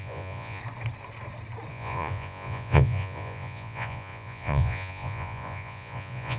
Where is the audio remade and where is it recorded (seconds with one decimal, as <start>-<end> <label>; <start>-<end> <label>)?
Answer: 0.0-0.6 remade; 0.6-1.7 recorded; 1.7-6.4 remade